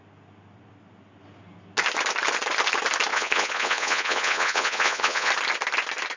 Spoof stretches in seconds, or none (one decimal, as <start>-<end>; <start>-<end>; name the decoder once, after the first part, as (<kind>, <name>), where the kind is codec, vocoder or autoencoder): 3.1-5.3 (vocoder, Vocos)